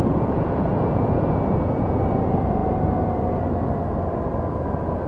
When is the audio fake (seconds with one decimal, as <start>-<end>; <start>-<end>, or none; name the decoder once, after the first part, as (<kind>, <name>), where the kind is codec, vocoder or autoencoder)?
0.0-2.6 (vocoder, Vocos); 4.5-5.1